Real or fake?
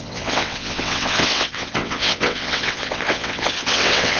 fake